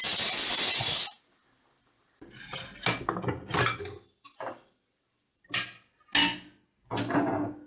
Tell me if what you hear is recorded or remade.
recorded